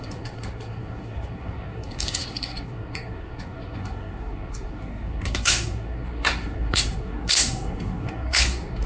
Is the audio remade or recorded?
remade